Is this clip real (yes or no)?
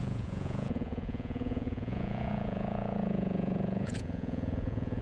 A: no